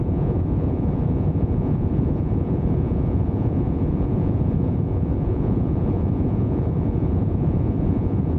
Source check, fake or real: fake